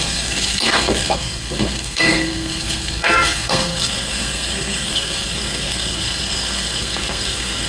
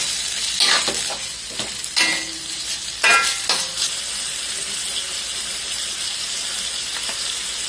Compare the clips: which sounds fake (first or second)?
first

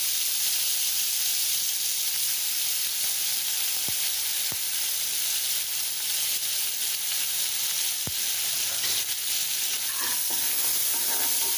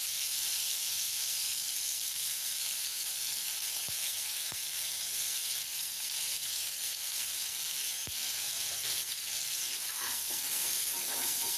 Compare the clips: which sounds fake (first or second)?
second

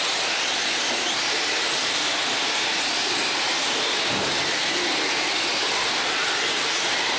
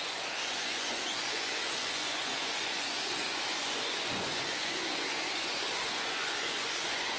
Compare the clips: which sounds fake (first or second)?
second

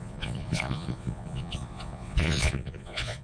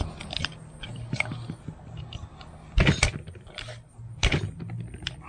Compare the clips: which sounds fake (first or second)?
first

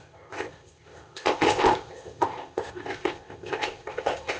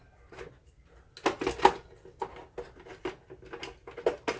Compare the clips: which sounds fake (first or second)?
first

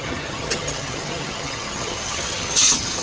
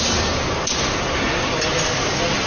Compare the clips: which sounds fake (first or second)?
first